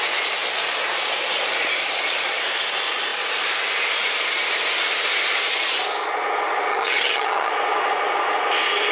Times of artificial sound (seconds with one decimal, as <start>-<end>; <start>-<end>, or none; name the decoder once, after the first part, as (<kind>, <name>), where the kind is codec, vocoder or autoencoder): 6.7-7.5 (vocoder, HiFi-GAN)